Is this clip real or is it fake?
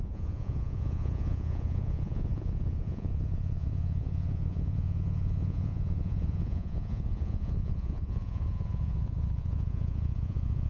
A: fake